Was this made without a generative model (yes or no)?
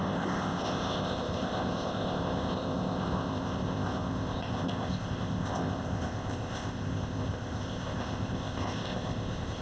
no